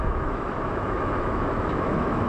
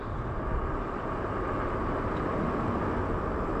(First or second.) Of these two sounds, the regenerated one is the first